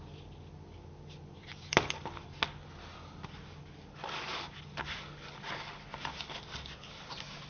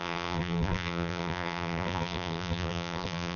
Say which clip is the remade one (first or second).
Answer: second